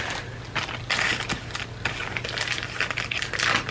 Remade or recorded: recorded